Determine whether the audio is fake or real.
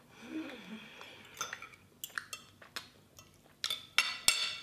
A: real